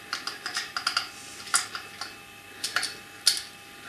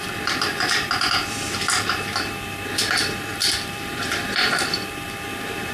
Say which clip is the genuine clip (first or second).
first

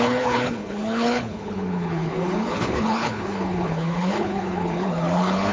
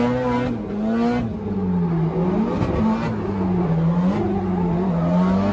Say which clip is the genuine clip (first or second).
second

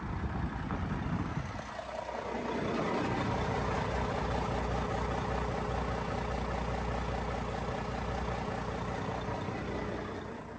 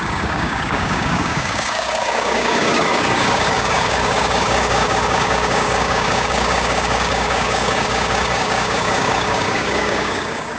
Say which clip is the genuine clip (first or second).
first